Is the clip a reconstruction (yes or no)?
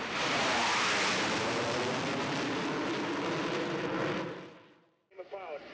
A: yes